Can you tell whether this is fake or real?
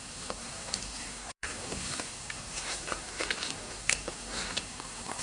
fake